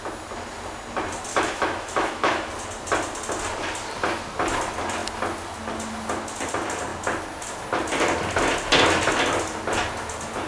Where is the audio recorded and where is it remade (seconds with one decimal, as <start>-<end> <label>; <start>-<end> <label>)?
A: 0.0-1.3 recorded; 1.3-2.5 remade; 2.5-10.5 recorded